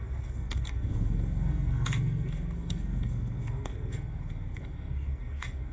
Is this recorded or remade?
remade